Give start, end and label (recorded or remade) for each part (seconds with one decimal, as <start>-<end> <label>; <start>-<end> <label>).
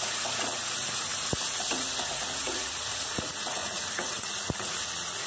0.0-5.3 remade